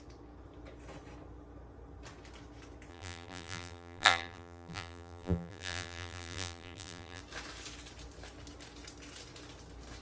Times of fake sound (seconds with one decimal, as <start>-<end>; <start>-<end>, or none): 2.9-7.2